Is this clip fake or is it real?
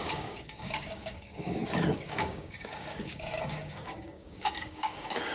fake